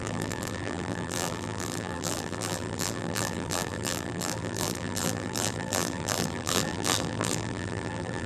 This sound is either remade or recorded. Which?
remade